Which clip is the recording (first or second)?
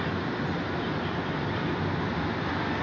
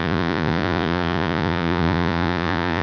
first